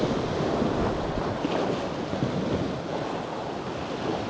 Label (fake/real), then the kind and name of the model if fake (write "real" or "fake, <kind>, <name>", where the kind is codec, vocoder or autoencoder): real